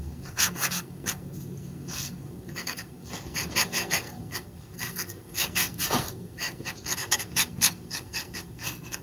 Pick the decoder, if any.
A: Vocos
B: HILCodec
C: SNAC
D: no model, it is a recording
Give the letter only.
C